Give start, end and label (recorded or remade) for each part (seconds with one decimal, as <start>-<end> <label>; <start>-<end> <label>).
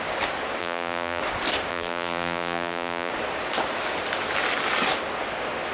0.0-0.6 recorded; 0.6-1.2 remade; 1.2-1.7 recorded; 1.7-3.1 remade; 3.1-5.7 recorded